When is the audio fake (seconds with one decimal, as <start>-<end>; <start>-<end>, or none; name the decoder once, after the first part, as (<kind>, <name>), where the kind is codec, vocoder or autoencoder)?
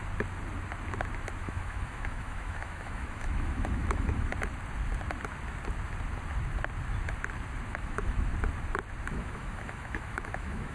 1.4-4.3 (autoencoder, DAC-VAE); 7.7-8.3; 9.1-10.7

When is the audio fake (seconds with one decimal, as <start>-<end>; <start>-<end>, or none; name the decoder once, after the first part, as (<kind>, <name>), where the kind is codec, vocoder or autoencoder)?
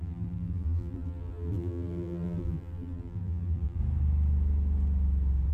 0.0-3.8 (vocoder, BigVGAN v2)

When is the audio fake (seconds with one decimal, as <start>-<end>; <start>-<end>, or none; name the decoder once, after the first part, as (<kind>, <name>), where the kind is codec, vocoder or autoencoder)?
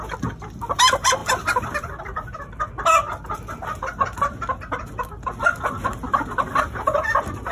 none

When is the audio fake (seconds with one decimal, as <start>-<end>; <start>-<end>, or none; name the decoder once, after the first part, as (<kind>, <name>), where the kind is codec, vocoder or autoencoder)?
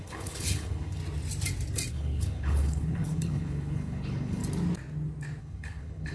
0.0-1.0 (codec, HILCodec); 1.9-4.4; 5.4-6.1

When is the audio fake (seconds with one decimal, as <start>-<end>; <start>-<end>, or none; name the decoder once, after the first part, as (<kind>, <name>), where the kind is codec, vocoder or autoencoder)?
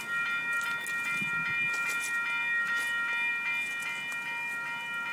none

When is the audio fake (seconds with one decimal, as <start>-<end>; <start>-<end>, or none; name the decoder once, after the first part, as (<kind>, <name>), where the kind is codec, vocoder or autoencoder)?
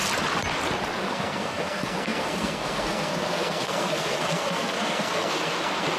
1.1-6.0 (codec, SNAC)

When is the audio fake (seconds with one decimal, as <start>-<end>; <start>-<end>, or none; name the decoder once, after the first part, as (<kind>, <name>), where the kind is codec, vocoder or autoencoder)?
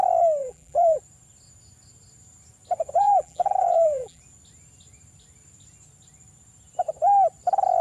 0.4-1.0 (vocoder, BigVGAN v2); 3.0-4.2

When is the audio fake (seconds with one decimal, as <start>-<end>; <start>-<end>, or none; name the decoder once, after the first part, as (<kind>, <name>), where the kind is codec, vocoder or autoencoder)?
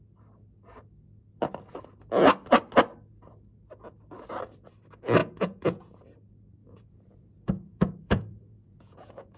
5.2-6.0 (vocoder, Vocos); 6.6-9.4